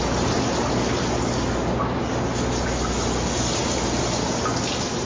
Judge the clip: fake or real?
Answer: real